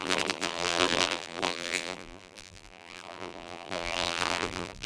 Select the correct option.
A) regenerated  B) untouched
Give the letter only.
A